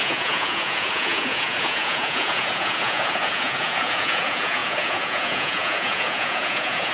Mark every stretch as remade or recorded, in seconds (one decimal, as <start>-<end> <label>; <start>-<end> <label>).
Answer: 0.0-6.9 remade

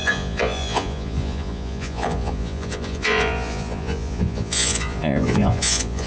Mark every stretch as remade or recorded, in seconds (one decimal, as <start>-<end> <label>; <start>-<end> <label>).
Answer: 0.0-6.1 remade

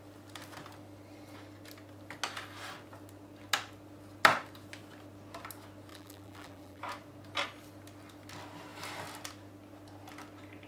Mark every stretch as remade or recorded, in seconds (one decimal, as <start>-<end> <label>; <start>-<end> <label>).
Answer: 0.0-5.9 recorded; 5.9-6.8 remade; 6.8-10.7 recorded

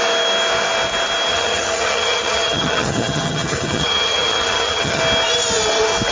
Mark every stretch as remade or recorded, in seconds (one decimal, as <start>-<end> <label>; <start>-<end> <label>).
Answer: 0.0-1.3 recorded; 1.3-5.0 remade; 5.0-6.1 recorded

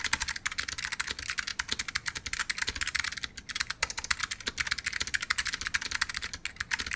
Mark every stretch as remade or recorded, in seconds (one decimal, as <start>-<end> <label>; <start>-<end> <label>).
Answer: 0.0-7.0 recorded

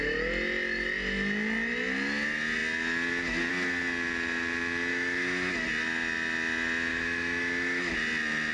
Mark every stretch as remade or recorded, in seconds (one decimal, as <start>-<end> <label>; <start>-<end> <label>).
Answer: 0.0-4.9 recorded; 4.9-5.5 remade; 5.5-6.9 recorded; 6.9-7.9 remade; 7.9-8.5 recorded

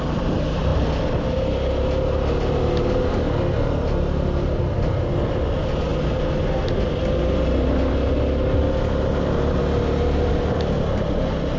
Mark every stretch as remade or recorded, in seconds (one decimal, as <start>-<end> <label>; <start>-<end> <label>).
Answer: 0.0-11.6 recorded